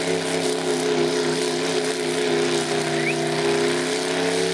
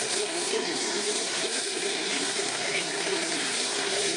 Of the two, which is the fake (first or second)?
second